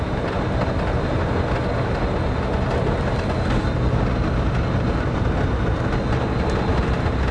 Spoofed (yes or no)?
no